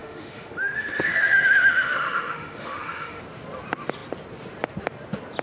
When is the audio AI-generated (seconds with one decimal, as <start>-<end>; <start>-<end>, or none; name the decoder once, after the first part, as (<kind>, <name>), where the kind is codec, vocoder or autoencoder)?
0.0-3.2 (autoencoder, DAC-VAE)